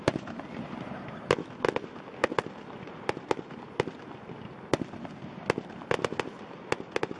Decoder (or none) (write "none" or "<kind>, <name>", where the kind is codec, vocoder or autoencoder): none